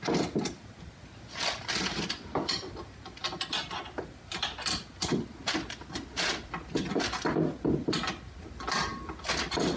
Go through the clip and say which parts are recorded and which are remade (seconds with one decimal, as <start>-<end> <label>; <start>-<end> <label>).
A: 0.0-9.8 recorded